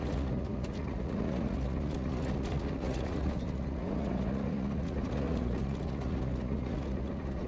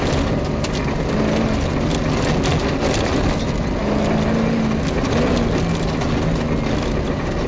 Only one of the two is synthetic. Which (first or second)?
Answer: first